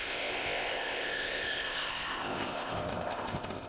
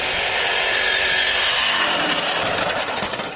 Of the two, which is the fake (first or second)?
first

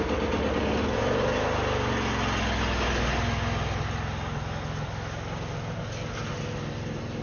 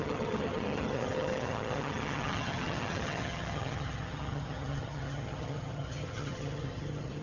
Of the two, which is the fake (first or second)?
second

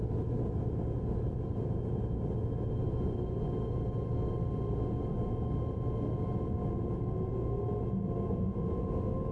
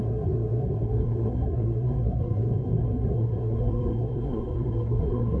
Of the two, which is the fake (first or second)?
second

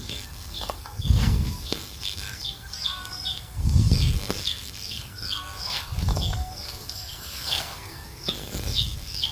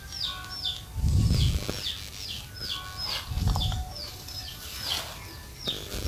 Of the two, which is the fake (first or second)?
first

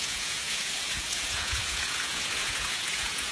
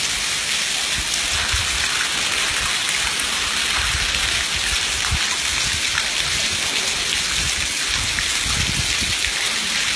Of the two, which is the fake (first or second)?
first